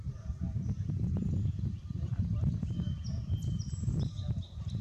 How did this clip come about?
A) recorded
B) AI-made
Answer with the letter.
B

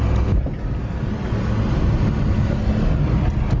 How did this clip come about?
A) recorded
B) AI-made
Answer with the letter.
A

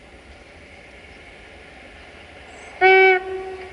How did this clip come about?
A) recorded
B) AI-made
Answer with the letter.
A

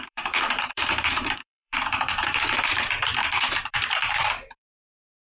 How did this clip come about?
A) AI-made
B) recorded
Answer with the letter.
A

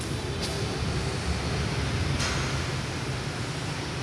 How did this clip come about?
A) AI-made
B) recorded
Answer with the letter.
B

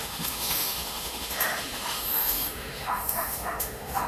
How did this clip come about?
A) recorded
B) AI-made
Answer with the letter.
B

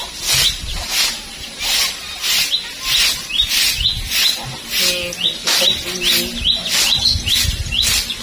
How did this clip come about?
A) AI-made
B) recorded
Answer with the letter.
B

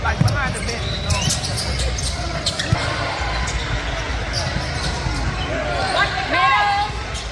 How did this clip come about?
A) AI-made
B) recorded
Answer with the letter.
B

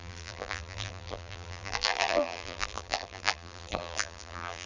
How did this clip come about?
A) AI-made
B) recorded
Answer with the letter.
A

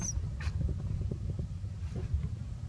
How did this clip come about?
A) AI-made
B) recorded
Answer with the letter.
B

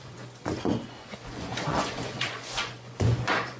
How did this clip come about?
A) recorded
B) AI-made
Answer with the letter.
B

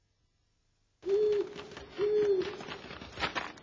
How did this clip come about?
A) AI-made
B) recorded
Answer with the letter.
B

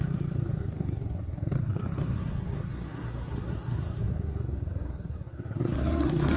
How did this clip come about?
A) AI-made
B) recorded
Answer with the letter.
A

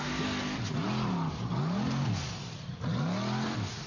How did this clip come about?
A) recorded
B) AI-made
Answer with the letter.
A